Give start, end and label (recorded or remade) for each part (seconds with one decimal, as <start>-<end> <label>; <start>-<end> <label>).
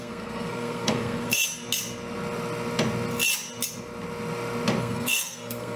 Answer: 0.0-1.4 remade; 1.4-4.8 recorded; 4.8-5.8 remade